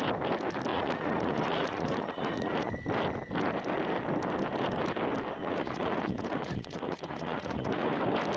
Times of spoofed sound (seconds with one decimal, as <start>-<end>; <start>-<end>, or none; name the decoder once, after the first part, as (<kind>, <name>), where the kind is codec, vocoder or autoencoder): 0.7-2.7 (vocoder, Vocos); 5.4-8.0